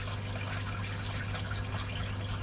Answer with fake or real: real